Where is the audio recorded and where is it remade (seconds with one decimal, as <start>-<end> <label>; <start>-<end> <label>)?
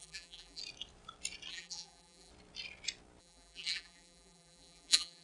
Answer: 0.0-0.6 remade; 0.6-1.5 recorded; 1.5-2.3 remade; 2.3-3.2 recorded; 3.2-5.2 remade